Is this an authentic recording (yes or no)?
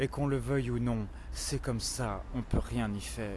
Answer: yes